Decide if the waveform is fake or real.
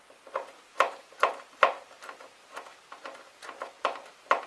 real